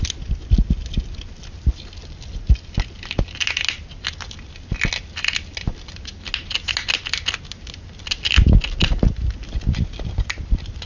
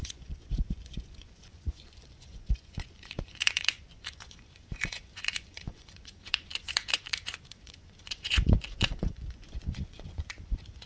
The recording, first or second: first